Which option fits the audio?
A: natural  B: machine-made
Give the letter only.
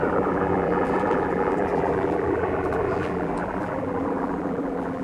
B